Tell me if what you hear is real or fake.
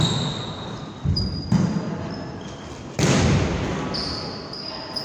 real